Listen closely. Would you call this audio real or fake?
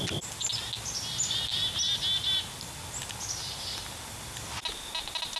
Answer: real